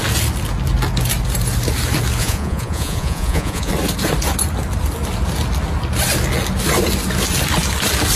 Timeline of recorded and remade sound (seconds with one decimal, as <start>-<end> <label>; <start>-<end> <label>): 0.0-2.2 recorded; 2.2-3.7 remade; 3.7-8.2 recorded